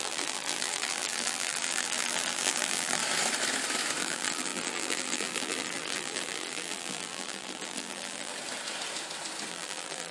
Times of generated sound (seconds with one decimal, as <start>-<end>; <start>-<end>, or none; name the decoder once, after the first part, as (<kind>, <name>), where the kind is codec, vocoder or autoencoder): 0.0-3.0 (vocoder, BigVGAN v2); 4.0-8.3; 9.5-10.1